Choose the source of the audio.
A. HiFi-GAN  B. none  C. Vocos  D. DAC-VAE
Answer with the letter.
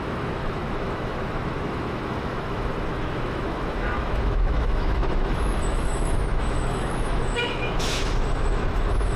D